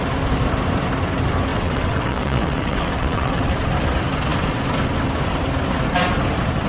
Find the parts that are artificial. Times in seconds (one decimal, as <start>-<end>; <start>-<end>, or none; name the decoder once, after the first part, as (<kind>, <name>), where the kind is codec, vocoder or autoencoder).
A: 1.5-3.5 (vocoder, WaveNeXt)